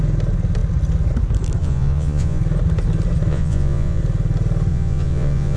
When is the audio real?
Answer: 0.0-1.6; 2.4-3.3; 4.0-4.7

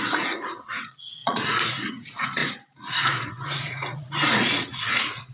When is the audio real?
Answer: none

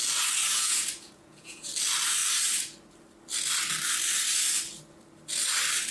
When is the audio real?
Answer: 0.0-0.5; 1.7-5.9

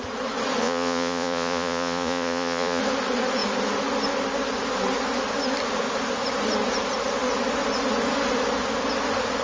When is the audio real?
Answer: 0.0-0.6; 2.8-9.4

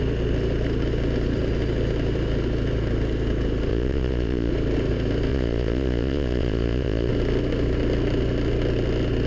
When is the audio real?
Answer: 0.0-3.7; 4.5-5.3; 7.1-9.3

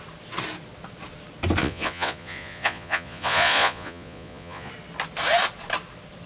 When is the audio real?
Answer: 0.0-1.6; 4.7-6.3

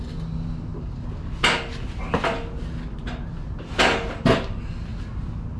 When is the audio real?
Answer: 0.0-5.6